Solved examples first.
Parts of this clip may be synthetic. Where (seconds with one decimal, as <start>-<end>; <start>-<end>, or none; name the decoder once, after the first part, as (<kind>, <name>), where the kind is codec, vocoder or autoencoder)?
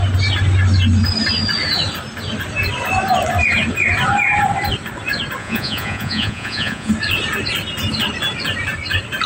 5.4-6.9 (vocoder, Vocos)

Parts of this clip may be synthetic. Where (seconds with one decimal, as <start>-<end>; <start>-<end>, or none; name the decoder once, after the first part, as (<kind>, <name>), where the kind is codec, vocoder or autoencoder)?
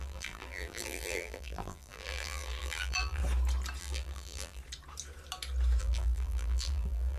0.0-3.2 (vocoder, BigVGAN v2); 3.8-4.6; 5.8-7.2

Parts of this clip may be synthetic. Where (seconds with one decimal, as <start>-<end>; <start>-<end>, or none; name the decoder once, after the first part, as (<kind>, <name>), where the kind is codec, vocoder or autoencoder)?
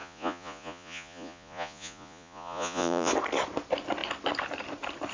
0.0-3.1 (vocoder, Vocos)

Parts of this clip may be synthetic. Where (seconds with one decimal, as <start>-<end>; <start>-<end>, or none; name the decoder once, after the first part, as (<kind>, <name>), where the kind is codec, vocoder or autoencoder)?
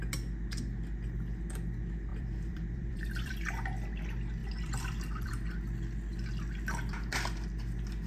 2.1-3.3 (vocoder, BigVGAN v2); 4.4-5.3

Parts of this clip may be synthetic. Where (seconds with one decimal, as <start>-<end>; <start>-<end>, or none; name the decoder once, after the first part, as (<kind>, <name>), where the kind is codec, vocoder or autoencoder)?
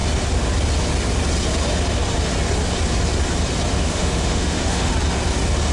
3.7-4.9 (autoencoder, DAC-VAE)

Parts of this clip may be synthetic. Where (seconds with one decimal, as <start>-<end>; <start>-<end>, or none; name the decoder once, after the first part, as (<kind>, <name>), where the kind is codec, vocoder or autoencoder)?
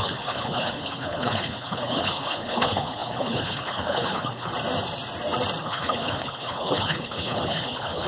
0.0-4.5 (codec, HILCodec); 5.6-8.1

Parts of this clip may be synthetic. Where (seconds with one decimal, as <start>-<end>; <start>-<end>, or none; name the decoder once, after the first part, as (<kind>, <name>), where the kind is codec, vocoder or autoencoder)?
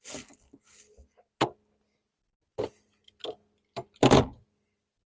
none